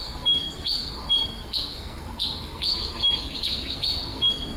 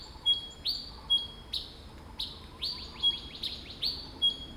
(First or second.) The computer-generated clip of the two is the first